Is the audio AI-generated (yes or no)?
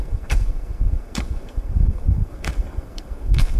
yes